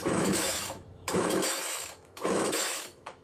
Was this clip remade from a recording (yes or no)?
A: yes